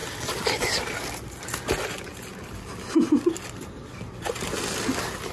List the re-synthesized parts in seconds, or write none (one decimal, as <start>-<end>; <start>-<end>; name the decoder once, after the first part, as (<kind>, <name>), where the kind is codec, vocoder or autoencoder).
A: none